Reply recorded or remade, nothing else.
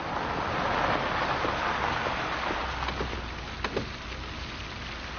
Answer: recorded